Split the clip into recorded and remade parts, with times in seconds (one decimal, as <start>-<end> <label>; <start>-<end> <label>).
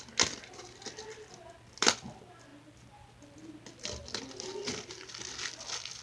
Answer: 0.0-6.0 recorded